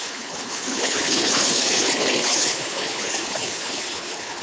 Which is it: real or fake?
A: fake